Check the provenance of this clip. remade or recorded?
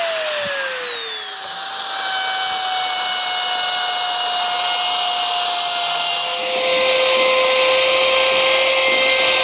recorded